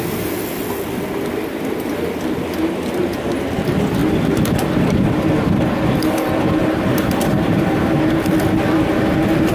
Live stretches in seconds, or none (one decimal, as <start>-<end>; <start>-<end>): 0.0-6.6; 7.9-9.5